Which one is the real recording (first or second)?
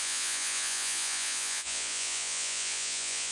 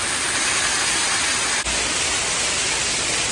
second